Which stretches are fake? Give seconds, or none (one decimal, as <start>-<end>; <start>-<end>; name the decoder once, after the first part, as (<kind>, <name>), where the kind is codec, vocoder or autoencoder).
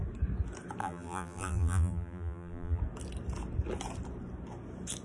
0.8-2.8 (vocoder, BigVGAN v2)